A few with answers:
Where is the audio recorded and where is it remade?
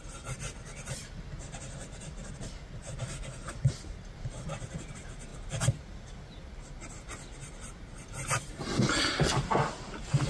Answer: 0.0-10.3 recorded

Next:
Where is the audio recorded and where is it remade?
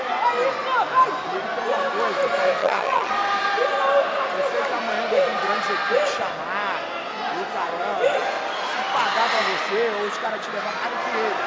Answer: 0.0-2.6 recorded; 2.6-3.1 remade; 3.1-11.5 recorded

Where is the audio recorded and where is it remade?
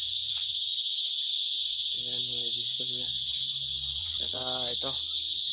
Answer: 0.0-0.7 remade; 0.7-4.0 recorded; 4.0-4.4 remade; 4.4-5.5 recorded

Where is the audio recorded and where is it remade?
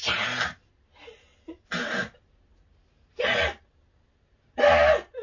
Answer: 0.0-0.7 remade; 0.7-2.0 recorded; 2.0-3.6 remade; 3.6-5.2 recorded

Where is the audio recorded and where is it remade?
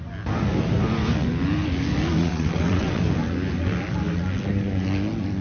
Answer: 0.0-2.2 recorded; 2.2-3.0 remade; 3.0-5.4 recorded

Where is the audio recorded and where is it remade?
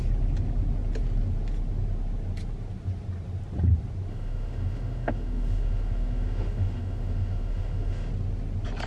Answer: 0.0-4.1 recorded; 4.1-8.1 remade; 8.1-8.9 recorded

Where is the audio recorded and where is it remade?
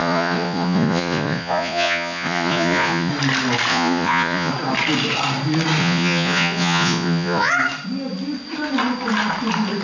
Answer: 0.0-3.1 remade; 3.1-3.7 recorded; 3.7-4.5 remade; 4.5-5.8 recorded; 5.8-7.5 remade; 7.5-9.8 recorded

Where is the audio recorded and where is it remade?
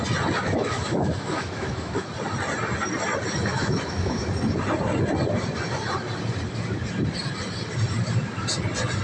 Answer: 0.0-0.4 recorded; 0.4-2.1 remade; 2.1-3.5 recorded; 3.5-4.3 remade; 4.3-9.0 recorded